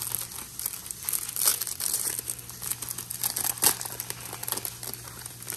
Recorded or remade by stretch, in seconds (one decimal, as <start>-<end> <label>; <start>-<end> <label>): 0.0-1.5 recorded; 1.5-2.1 remade; 2.1-5.6 recorded

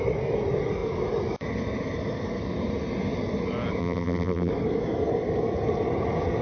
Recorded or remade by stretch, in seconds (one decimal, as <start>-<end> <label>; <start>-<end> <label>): 0.0-3.8 recorded; 3.8-4.5 remade; 4.5-6.4 recorded